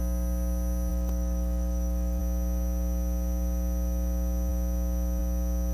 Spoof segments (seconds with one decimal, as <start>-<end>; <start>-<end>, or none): 0.9-2.2